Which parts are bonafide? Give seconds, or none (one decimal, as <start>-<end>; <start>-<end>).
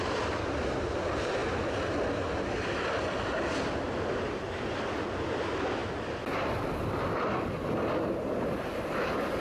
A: 0.0-9.4